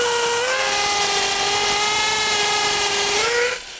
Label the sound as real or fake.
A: real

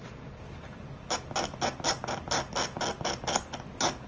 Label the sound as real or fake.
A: real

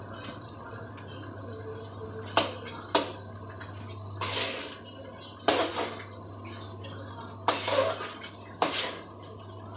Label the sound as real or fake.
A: real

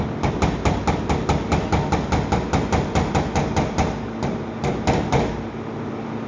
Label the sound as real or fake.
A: real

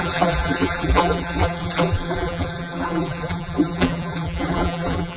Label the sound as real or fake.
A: fake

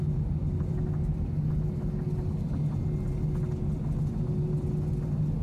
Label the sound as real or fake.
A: real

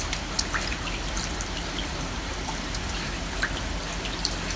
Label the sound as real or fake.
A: real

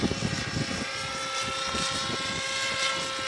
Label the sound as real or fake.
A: real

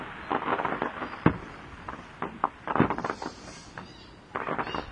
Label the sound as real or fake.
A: real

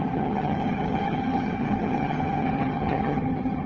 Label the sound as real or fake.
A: fake